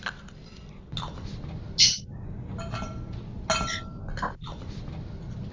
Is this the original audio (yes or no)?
yes